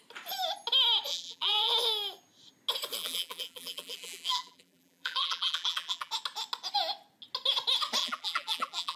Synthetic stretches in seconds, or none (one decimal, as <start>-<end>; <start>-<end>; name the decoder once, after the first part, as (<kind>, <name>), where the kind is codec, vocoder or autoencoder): 1.1-1.7 (vocoder, BigVGAN v2); 3.0-6.1; 8.0-9.0

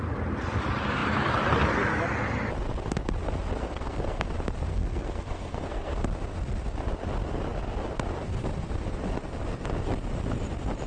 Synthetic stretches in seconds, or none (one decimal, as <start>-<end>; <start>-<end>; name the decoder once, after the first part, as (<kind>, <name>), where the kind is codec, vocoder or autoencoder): 3.6-4.3 (codec, SNAC); 4.7-6.0

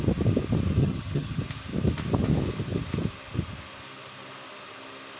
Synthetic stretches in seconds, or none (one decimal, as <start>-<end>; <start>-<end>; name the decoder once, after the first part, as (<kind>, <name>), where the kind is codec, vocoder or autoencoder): 0.8-1.4 (vocoder, HiFi-GAN)

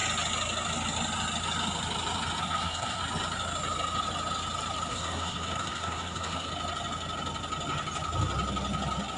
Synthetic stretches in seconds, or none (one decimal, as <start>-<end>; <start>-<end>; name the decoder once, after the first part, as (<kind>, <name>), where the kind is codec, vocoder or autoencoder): 2.4-3.0 (codec, SNAC); 4.9-6.5

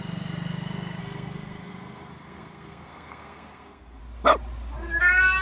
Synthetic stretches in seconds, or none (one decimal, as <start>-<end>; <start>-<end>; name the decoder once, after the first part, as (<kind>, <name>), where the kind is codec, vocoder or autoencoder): 1.0-4.0 (codec, SNAC)

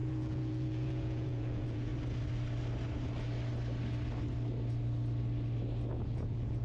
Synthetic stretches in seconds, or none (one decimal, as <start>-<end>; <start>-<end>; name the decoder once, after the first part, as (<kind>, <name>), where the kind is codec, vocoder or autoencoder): 0.0-1.9 (vocoder, Vocos); 5.9-6.6